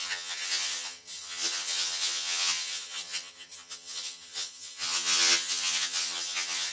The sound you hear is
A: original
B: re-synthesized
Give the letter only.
B